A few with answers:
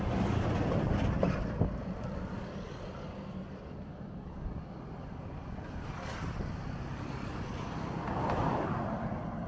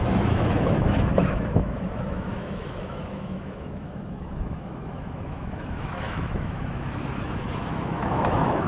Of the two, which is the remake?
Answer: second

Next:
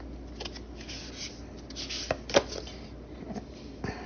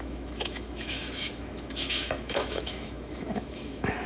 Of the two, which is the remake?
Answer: second